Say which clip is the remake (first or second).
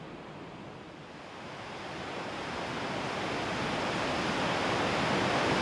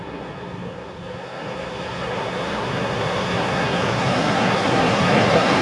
second